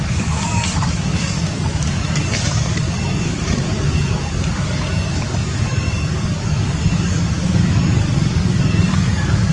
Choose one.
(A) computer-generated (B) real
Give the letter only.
A